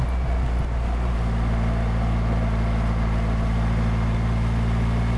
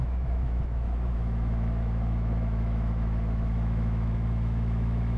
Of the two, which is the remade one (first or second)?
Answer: second